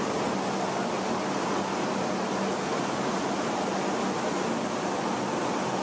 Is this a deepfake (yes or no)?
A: no